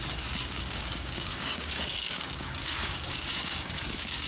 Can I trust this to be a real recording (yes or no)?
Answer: no